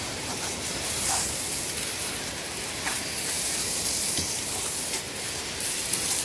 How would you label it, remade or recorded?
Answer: remade